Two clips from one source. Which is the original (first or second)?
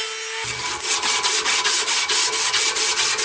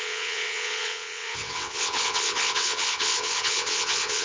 first